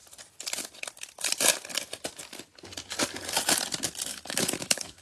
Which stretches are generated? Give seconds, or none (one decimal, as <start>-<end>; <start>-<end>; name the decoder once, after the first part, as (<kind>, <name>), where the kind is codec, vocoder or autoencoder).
4.1-5.0 (autoencoder, DAC-VAE)